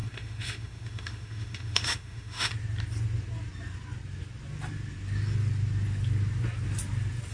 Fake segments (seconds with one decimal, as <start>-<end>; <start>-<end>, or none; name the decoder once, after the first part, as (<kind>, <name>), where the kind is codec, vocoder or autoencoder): 0.0-2.5 (autoencoder, DAC-VAE)